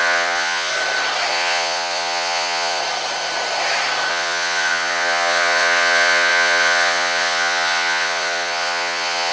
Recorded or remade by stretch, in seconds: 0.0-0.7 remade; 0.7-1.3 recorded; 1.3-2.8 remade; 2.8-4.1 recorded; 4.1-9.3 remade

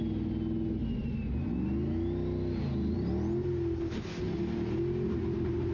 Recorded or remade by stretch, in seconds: 0.0-5.7 recorded

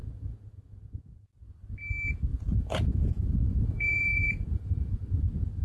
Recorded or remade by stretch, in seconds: 0.0-1.3 remade; 1.3-2.3 recorded; 2.3-4.6 remade; 4.6-5.6 recorded

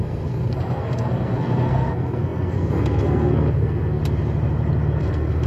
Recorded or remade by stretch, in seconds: 0.0-4.0 remade; 4.0-5.0 recorded; 5.0-5.5 remade

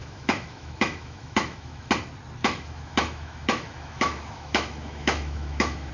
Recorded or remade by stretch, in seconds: 0.0-1.9 remade; 1.9-2.4 recorded; 2.4-5.9 remade